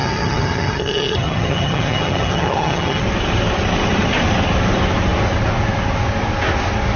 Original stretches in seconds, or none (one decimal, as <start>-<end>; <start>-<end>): 3.0-7.0

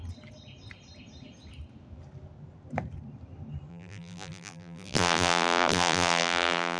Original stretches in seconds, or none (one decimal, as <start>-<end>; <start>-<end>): 0.0-3.7